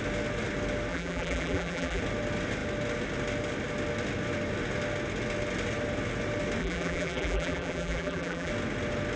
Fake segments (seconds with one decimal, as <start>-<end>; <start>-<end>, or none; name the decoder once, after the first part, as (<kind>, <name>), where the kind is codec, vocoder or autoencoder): 0.9-2.0 (vocoder, BigVGAN v2); 6.6-8.5

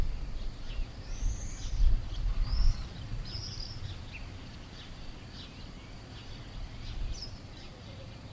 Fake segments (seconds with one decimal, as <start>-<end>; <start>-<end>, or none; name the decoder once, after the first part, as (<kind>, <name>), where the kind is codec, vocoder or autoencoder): 0.0-3.1 (vocoder, BigVGAN v2); 7.3-8.3

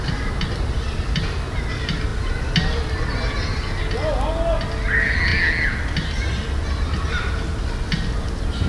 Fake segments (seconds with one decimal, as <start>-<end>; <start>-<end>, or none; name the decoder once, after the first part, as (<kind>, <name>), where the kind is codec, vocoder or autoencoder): none

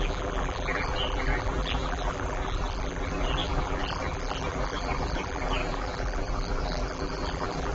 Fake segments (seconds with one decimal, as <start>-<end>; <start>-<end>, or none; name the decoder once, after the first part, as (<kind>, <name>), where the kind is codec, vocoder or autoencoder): 0.0-7.7 (vocoder, BigVGAN v2)

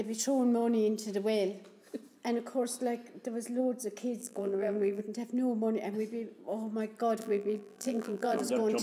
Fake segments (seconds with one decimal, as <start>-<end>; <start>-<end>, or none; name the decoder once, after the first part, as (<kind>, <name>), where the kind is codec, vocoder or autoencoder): 4.2-5.0 (vocoder, BigVGAN v2); 7.2-8.4

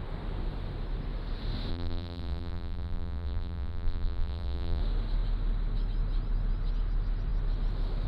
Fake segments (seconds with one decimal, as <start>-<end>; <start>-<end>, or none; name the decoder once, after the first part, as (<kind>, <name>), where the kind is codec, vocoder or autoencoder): 1.7-4.8 (vocoder, BigVGAN v2)

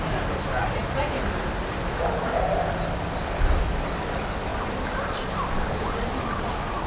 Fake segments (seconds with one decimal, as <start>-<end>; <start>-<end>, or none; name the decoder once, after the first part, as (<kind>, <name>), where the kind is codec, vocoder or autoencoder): 4.5-6.9 (vocoder, BigVGAN v2)